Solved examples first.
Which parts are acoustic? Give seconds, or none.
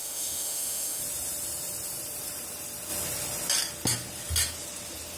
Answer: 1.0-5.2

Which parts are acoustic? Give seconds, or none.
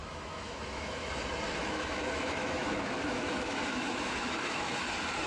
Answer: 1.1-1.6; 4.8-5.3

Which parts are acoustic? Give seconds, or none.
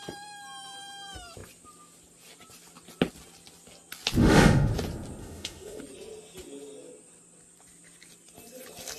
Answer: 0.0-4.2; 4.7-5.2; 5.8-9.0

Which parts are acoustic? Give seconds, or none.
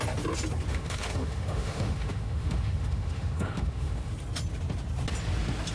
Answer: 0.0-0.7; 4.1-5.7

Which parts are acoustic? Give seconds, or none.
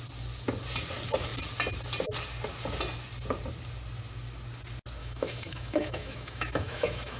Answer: 0.0-5.0